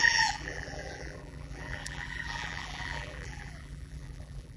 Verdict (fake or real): fake